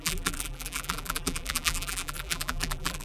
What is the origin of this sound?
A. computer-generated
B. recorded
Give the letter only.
A